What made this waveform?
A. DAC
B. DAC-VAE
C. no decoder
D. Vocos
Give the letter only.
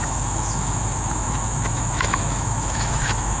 B